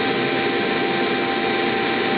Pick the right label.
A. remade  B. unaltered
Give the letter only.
B